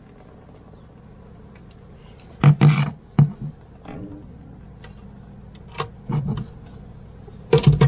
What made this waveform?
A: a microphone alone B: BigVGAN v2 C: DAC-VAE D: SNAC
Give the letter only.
A